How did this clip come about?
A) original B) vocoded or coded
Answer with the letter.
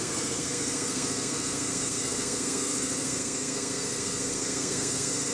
B